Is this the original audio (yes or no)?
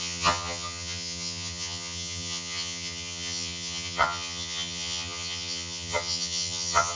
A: no